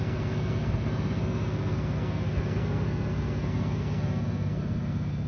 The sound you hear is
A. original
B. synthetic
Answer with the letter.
B